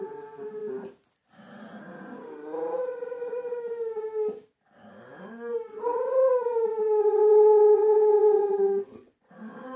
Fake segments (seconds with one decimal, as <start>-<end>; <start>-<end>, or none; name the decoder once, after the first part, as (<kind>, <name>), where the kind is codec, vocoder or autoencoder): 8.4-9.4 (vocoder, Vocos)